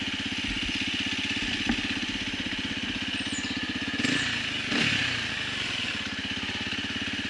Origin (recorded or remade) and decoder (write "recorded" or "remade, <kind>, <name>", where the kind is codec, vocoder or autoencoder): recorded